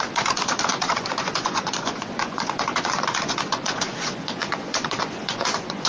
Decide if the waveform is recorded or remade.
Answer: remade